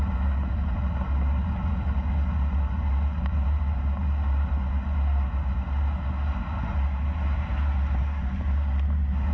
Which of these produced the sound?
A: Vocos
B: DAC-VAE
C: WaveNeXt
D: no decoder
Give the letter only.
D